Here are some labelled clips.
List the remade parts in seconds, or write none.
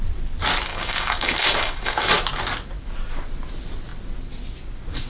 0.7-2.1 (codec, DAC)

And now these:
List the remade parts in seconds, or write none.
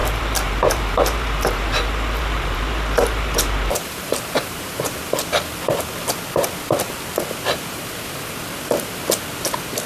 0.0-5.0 (vocoder, BigVGAN v2)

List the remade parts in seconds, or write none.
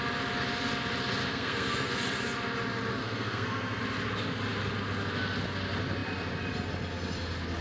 1.3-1.9 (codec, SNAC); 3.0-3.8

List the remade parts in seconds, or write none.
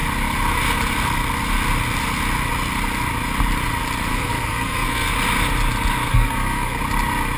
4.1-5.1 (codec, SNAC); 6.1-6.8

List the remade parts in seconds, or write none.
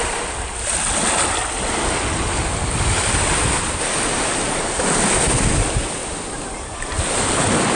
none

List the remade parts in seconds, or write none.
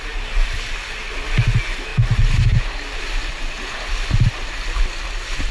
none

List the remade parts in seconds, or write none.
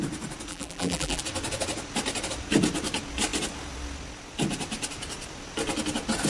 0.5-1.2 (vocoder, BigVGAN v2)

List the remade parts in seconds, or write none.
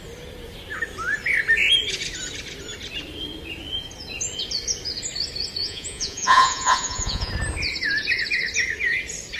5.6-7.3 (vocoder, Vocos)